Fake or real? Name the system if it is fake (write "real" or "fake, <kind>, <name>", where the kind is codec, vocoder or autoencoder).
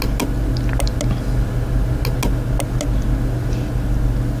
real